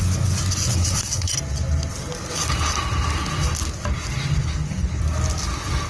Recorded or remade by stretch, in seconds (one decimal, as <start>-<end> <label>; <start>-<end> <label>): 0.0-0.7 recorded; 0.7-1.3 remade; 1.3-4.4 recorded; 4.4-5.0 remade; 5.0-5.9 recorded